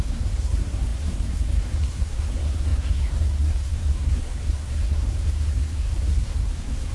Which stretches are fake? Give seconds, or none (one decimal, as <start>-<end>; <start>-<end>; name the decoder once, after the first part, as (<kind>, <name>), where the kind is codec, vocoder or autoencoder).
0.0-6.9 (codec, SNAC)